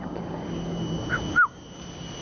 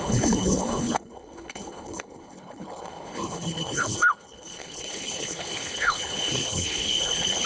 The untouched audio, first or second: first